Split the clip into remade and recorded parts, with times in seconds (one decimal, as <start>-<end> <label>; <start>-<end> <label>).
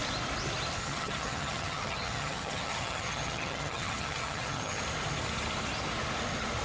0.0-0.8 recorded; 0.8-4.8 remade; 4.8-6.6 recorded